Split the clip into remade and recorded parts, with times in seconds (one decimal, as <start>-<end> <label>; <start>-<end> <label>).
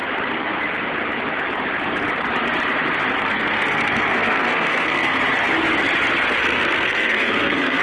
0.0-3.2 recorded; 3.2-5.2 remade; 5.2-6.3 recorded; 6.3-7.8 remade